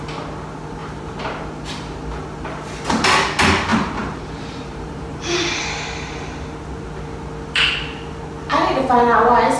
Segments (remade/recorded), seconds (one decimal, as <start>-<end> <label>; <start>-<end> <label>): 0.0-0.8 recorded; 0.8-1.4 remade; 1.4-3.7 recorded; 3.7-5.4 remade; 5.4-9.6 recorded

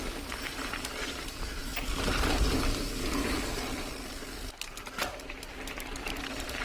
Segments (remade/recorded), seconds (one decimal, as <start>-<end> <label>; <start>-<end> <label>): 0.0-1.7 remade; 1.7-5.7 recorded; 5.7-6.6 remade